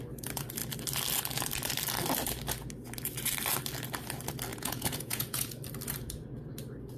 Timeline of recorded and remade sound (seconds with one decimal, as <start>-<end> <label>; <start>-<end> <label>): 0.0-4.5 recorded; 4.5-5.5 remade; 5.5-7.0 recorded